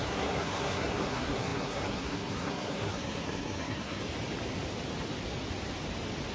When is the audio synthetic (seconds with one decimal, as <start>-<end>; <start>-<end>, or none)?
0.0-4.0